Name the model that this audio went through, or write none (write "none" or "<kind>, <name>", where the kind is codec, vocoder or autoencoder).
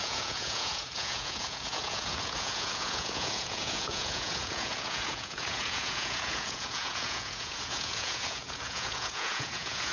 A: vocoder, Vocos